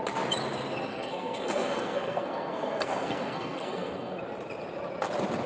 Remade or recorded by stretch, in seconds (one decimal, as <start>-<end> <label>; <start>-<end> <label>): 0.0-0.9 recorded; 0.9-4.2 remade; 4.2-5.5 recorded